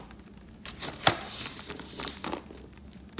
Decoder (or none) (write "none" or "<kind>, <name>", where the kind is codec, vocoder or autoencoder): vocoder, BigVGAN v2